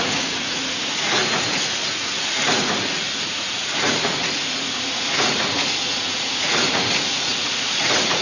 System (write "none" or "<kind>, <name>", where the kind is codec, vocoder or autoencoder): vocoder, Vocos